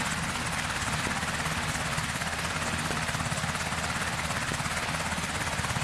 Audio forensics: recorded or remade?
recorded